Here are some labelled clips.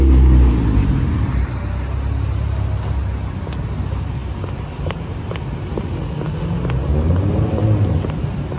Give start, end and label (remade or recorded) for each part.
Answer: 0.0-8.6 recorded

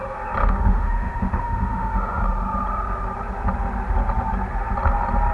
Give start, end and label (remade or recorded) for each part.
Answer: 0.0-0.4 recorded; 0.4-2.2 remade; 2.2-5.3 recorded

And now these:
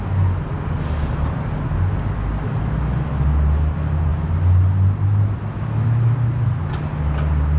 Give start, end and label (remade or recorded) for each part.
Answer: 0.0-7.6 recorded

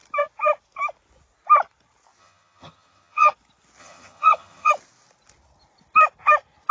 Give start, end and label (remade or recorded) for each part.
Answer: 0.0-2.2 recorded; 2.2-3.3 remade; 3.3-3.8 recorded; 3.8-4.7 remade; 4.7-6.7 recorded